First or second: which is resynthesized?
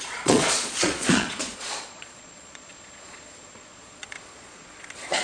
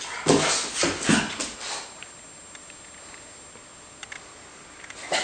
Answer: first